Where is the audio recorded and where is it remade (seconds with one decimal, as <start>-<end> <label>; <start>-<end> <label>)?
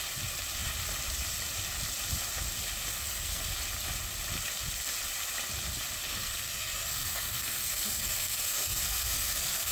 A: 0.0-2.9 recorded; 2.9-3.5 remade; 3.5-6.1 recorded; 6.1-9.7 remade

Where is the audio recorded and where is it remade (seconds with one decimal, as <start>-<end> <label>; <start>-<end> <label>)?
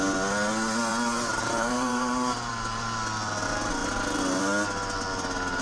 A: 0.0-0.9 recorded; 0.9-2.5 remade; 2.5-5.6 recorded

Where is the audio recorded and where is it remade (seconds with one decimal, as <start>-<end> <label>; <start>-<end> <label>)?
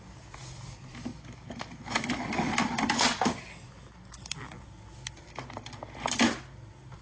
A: 0.0-7.0 recorded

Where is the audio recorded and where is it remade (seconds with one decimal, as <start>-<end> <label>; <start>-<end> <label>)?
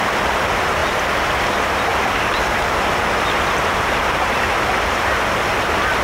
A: 0.0-6.0 recorded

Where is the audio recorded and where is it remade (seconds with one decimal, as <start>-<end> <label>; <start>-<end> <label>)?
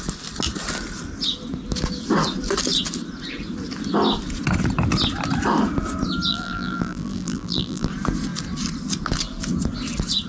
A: 0.0-6.3 recorded; 6.3-7.9 remade; 7.9-10.3 recorded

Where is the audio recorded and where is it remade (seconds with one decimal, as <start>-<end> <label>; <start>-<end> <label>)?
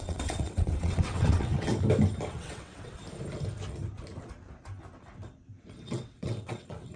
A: 0.0-1.7 remade; 1.7-2.3 recorded; 2.3-3.0 remade; 3.0-5.8 recorded; 5.8-7.0 remade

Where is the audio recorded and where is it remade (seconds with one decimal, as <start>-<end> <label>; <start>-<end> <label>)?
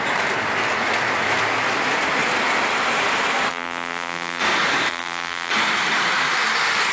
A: 0.0-3.5 recorded; 3.5-4.4 remade; 4.4-4.9 recorded; 4.9-5.5 remade; 5.5-6.9 recorded